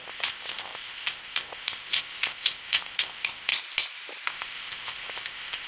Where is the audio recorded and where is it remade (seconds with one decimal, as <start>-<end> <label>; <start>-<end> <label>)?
0.0-3.5 remade; 3.5-4.3 recorded; 4.3-5.7 remade